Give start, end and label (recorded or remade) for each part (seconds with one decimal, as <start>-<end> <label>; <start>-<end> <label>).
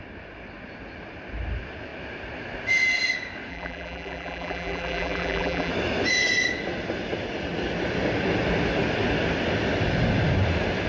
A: 0.0-3.5 recorded; 3.5-5.7 remade; 5.7-10.9 recorded